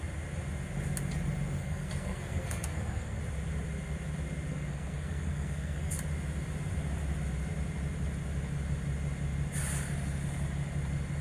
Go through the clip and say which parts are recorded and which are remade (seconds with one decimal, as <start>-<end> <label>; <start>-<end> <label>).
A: 0.0-1.6 recorded; 1.6-3.2 remade; 3.2-4.5 recorded; 4.5-5.9 remade; 5.9-11.2 recorded